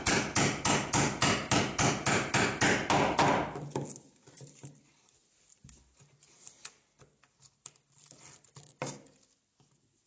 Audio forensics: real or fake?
real